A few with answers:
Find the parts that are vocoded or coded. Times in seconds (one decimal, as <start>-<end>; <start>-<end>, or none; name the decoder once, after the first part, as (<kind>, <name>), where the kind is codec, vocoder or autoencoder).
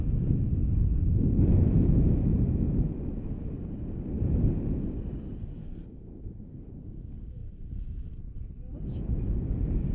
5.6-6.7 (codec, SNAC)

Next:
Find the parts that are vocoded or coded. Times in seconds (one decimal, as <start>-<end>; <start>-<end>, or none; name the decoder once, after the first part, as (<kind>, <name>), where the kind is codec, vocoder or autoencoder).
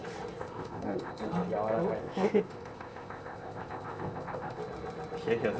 0.4-1.2 (codec, ZipCodec); 2.0-4.6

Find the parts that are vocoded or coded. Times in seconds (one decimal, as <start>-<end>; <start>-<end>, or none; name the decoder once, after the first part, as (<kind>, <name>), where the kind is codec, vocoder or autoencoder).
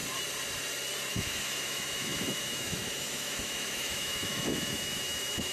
1.1-5.5 (autoencoder, DAC-VAE)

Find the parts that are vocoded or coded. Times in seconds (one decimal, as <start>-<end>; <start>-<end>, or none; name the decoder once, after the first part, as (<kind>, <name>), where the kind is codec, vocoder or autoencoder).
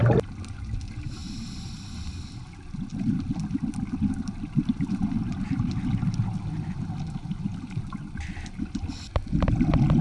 none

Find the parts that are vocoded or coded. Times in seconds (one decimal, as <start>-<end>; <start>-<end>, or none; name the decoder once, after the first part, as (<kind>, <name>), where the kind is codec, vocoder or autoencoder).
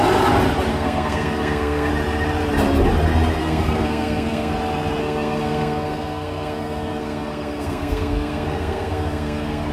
0.7-1.9 (codec, SNAC); 3.4-4.5; 5.0-9.7